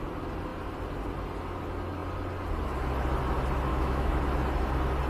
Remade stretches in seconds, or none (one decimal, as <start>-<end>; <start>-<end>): 3.7-4.2